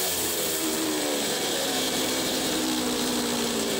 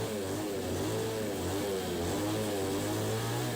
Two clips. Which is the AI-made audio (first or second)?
first